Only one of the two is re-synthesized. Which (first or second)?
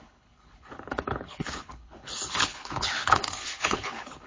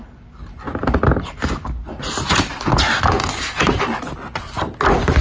first